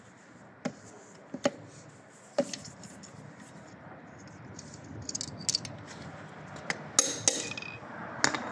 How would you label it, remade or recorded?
recorded